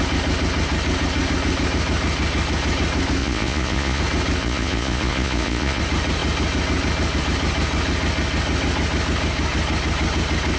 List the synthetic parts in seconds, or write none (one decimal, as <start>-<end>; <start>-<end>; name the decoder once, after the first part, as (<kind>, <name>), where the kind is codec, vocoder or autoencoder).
3.2-4.0 (vocoder, Vocos); 4.4-5.8